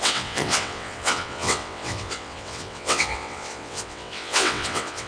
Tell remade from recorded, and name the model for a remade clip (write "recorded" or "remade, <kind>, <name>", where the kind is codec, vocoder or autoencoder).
remade, vocoder, WaveNeXt